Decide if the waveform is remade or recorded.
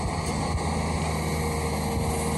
recorded